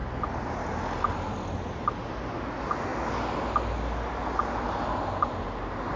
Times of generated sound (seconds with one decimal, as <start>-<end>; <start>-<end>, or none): none